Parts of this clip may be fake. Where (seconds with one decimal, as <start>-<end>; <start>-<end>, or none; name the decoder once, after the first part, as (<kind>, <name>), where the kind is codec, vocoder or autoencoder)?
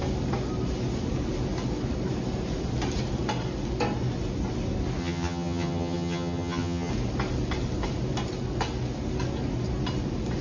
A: 5.0-6.9 (vocoder, HiFi-GAN)